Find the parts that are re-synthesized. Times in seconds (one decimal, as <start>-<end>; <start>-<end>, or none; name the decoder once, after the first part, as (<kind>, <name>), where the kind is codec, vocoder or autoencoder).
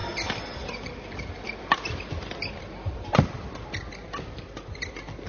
0.0-5.3 (vocoder, BigVGAN v2)